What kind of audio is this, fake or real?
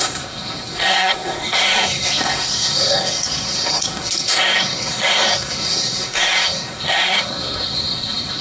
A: fake